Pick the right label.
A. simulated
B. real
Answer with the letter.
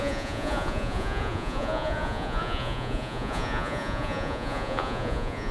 A